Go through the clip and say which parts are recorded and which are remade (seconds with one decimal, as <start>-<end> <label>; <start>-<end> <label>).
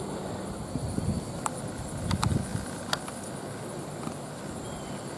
0.0-5.2 recorded